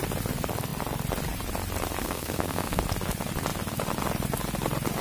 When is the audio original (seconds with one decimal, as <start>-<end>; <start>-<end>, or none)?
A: 0.0-2.0; 2.8-5.0